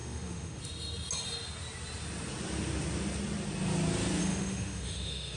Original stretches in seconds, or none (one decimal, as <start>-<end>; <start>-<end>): 0.6-4.2